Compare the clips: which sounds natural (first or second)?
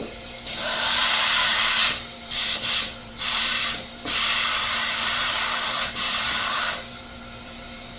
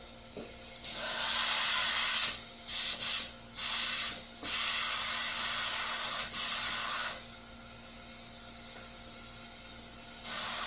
second